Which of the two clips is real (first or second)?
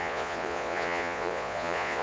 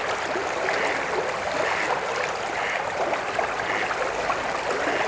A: second